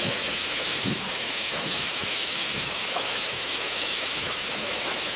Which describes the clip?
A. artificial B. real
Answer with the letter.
A